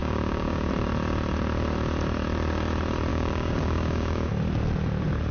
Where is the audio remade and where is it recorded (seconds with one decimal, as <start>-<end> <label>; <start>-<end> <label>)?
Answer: 0.0-0.7 remade; 0.7-3.1 recorded; 3.1-4.3 remade; 4.3-5.3 recorded